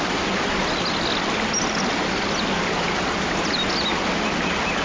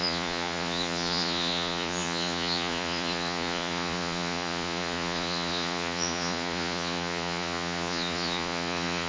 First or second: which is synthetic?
second